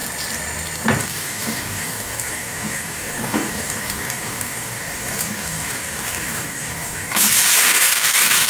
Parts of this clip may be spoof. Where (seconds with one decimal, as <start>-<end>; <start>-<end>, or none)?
1.0-8.5